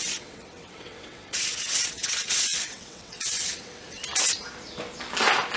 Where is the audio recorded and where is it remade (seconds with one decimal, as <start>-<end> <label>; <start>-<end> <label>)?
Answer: 0.0-4.0 remade; 4.0-5.6 recorded